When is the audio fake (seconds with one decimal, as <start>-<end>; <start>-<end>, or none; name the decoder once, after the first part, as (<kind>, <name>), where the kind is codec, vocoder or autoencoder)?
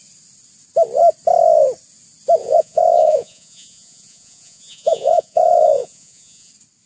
2.4-6.5 (vocoder, Vocos)